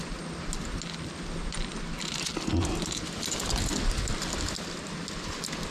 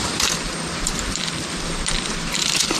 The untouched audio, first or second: first